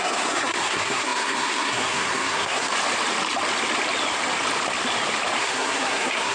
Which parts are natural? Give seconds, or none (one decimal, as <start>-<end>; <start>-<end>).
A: 2.7-5.4